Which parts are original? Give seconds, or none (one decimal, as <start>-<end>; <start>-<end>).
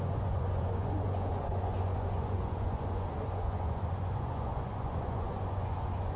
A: none